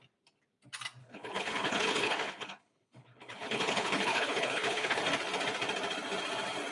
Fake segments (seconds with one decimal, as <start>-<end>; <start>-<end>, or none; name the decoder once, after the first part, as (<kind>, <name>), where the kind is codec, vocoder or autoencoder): 1.0-5.0 (codec, HILCodec)